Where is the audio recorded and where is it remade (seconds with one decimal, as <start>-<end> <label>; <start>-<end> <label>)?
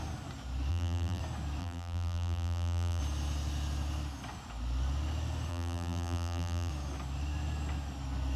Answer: 0.0-0.7 recorded; 0.7-1.2 remade; 1.2-1.6 recorded; 1.6-3.0 remade; 3.0-5.5 recorded; 5.5-6.7 remade; 6.7-8.4 recorded